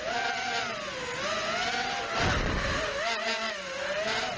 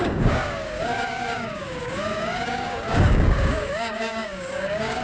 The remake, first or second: second